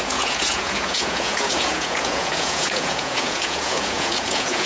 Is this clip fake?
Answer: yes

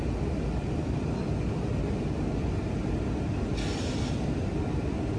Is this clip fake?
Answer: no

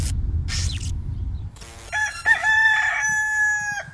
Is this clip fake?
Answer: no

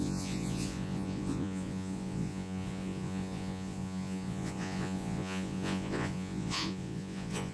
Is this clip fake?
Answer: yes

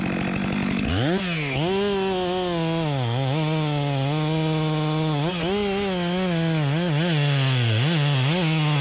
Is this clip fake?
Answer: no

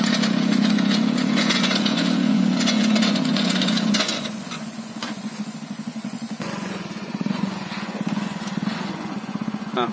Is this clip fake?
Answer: yes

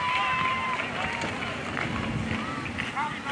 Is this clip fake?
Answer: no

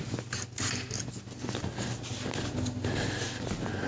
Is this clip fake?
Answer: no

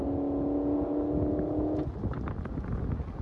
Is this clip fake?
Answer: no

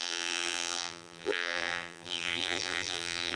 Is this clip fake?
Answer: yes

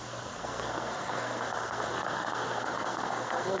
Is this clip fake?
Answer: yes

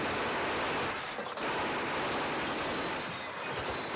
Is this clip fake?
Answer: no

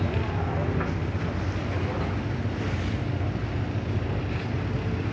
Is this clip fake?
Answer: no